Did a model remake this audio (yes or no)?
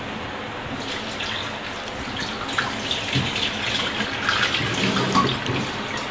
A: no